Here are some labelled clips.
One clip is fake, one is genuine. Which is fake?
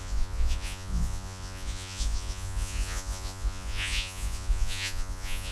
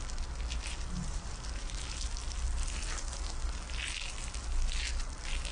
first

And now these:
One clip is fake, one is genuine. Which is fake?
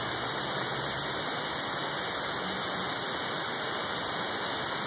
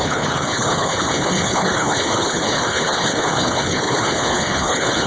second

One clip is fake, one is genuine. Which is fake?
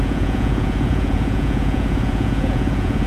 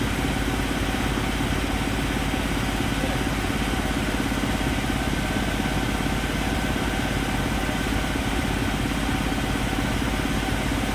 first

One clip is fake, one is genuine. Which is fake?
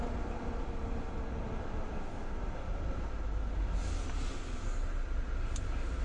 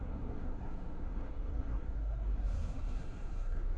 second